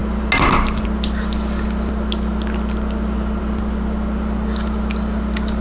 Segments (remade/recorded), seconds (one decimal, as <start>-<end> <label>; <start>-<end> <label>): 0.0-5.6 recorded